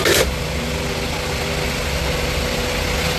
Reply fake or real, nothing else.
real